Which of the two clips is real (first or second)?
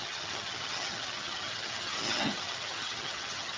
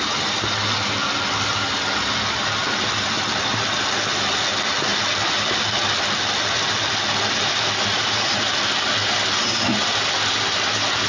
second